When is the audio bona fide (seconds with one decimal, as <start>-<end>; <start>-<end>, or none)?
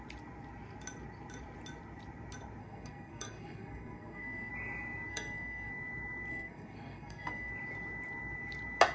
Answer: 0.0-2.6; 4.5-5.1; 5.7-6.3; 7.5-8.9